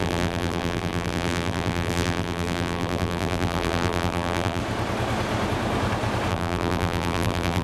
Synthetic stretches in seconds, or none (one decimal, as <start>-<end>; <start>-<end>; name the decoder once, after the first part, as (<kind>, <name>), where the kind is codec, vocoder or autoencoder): 0.0-4.6 (vocoder, BigVGAN v2); 6.3-7.6